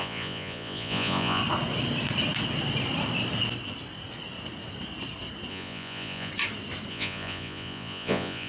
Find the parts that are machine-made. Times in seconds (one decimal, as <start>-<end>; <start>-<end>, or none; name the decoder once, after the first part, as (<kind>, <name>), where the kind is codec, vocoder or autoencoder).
0.0-1.4 (vocoder, Vocos); 5.5-6.3; 6.9-8.5